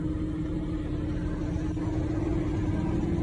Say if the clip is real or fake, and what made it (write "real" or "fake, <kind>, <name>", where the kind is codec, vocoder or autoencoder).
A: real